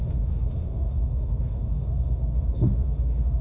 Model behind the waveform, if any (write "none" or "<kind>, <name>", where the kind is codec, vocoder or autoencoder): autoencoder, DAC-VAE